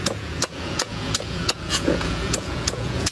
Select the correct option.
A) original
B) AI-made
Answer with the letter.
B